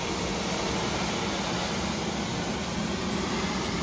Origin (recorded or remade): recorded